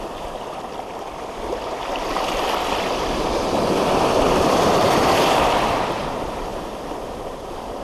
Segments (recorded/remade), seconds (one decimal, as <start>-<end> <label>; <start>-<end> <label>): 0.0-7.8 recorded